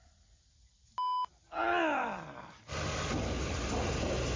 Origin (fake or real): real